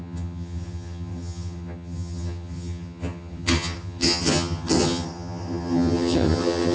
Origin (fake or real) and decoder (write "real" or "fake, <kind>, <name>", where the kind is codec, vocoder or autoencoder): fake, vocoder, HiFi-GAN